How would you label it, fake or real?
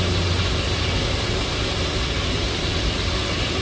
real